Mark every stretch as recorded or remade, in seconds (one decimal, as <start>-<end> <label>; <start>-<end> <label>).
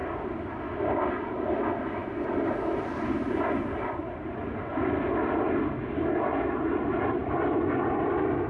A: 0.0-8.5 recorded